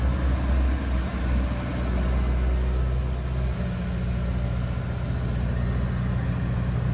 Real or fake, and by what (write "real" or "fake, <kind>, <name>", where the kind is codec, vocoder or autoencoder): real